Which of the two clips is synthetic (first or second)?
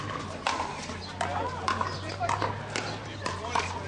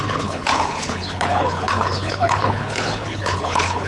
second